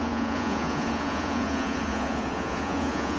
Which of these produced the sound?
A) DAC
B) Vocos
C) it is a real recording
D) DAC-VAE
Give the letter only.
B